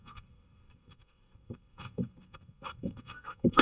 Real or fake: fake